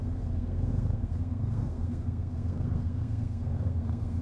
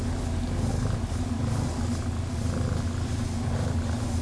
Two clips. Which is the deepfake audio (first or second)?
first